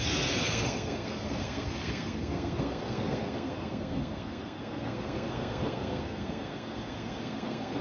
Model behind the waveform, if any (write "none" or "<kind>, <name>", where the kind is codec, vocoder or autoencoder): codec, SNAC